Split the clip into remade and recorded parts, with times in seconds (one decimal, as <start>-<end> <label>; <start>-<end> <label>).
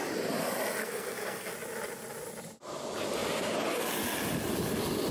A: 0.0-0.8 recorded; 0.8-1.5 remade; 1.5-5.1 recorded